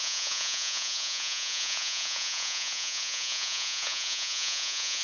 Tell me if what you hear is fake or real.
fake